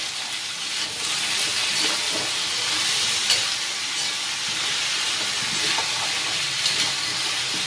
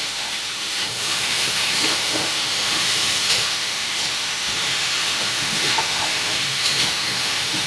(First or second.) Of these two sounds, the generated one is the second